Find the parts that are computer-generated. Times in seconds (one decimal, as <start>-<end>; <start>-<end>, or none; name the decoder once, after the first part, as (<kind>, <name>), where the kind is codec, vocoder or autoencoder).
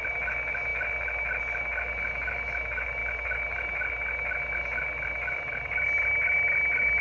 none